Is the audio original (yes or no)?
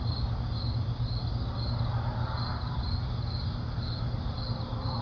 yes